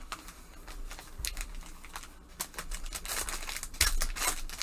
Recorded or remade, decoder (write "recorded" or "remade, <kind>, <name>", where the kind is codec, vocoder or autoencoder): recorded